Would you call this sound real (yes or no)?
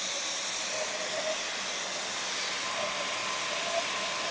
yes